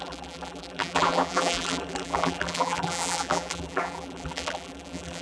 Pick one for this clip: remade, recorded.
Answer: remade